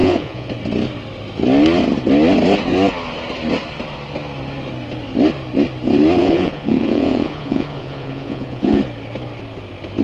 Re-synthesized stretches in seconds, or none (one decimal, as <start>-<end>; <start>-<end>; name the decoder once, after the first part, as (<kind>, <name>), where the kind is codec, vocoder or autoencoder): 0.0-0.5 (vocoder, Vocos); 6.2-8.8